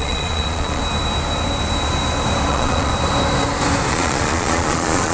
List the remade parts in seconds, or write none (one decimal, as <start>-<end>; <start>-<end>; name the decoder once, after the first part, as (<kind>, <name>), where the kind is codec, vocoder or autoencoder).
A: 0.0-0.8 (vocoder, Vocos); 2.5-2.9; 3.9-5.1